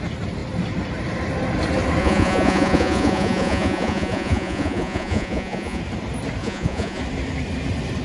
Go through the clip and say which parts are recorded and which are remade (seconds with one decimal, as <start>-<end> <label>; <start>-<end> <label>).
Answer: 0.0-2.0 recorded; 2.0-5.8 remade; 5.8-6.4 recorded; 6.4-7.0 remade; 7.0-8.0 recorded